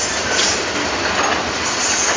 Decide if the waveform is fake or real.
real